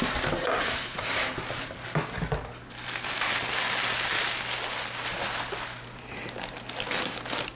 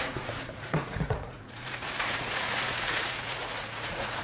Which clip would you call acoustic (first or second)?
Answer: first